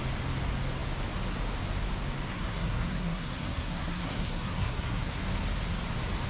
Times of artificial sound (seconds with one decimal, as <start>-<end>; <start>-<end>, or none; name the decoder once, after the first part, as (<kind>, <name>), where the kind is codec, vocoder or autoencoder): 2.3-5.2 (codec, SNAC)